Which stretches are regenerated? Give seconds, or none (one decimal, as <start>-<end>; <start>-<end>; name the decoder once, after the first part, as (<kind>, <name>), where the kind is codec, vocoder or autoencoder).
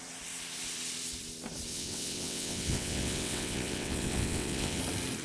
1.7-4.8 (vocoder, WaveNeXt)